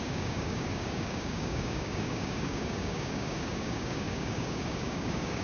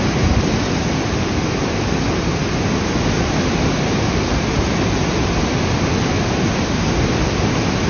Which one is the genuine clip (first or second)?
second